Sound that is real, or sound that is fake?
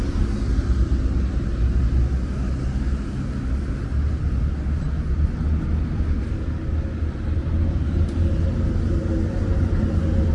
real